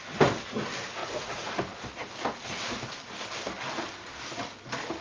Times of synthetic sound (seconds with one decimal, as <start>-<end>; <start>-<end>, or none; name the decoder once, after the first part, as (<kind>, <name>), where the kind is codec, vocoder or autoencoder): 1.0-1.6 (vocoder, Vocos)